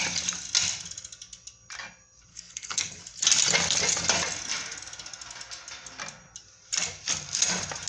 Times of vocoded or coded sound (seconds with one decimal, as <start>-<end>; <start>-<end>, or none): 2.3-3.0